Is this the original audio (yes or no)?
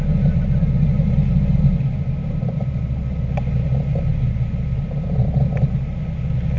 yes